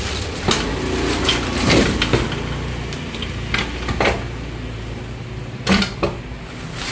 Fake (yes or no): no